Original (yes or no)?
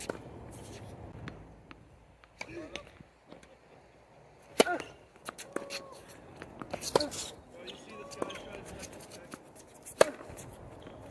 yes